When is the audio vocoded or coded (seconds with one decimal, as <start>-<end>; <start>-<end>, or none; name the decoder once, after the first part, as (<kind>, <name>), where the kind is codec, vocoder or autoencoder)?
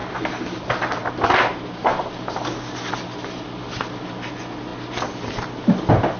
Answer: none